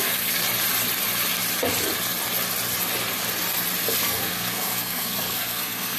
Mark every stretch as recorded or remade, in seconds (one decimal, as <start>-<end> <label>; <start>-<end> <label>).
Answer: 0.0-0.4 remade; 0.4-4.0 recorded; 4.0-6.0 remade